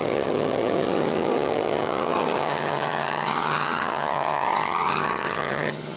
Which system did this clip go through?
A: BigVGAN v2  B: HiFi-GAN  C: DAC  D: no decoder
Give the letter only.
B